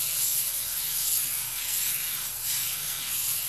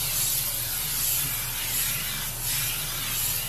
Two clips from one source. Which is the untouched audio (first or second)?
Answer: second